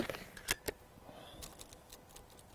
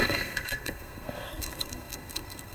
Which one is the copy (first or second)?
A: second